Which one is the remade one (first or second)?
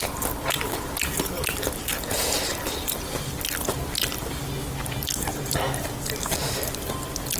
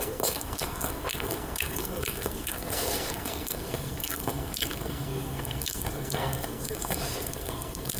second